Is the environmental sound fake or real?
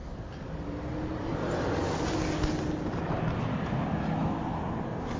real